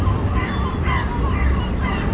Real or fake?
real